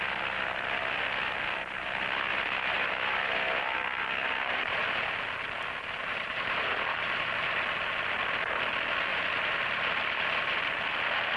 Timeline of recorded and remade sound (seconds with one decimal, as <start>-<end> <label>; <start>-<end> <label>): 0.0-2.3 recorded; 2.3-4.8 remade; 4.8-6.1 recorded; 6.1-7.3 remade; 7.3-9.1 recorded; 9.1-9.7 remade; 9.7-11.4 recorded